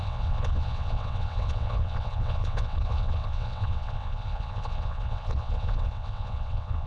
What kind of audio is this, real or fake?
fake